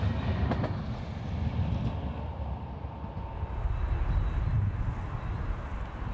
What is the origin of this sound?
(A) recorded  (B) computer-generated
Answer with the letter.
A